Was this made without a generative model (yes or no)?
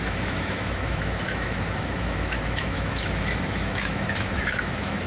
no